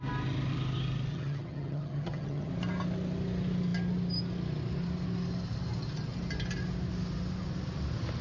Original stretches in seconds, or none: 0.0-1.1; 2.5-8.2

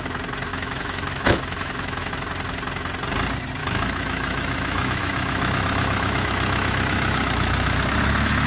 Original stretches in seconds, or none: 0.0-0.5; 2.1-3.6